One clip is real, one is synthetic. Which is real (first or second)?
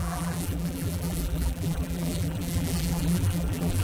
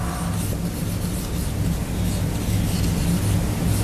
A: second